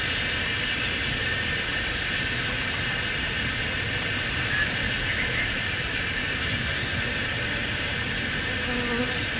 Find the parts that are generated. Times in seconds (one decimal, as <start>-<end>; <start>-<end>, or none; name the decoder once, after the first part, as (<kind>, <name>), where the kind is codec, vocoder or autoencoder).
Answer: 6.4-7.0 (codec, SNAC)